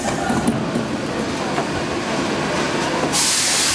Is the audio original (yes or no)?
yes